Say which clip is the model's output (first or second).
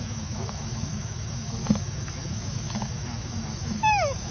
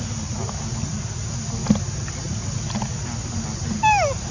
first